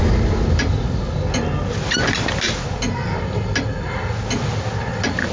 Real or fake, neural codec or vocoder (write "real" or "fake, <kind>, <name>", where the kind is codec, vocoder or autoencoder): real